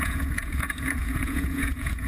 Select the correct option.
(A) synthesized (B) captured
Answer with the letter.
A